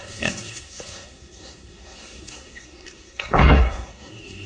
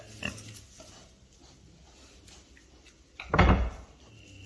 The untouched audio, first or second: second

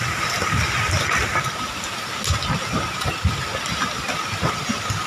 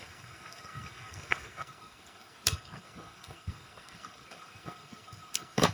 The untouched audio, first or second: first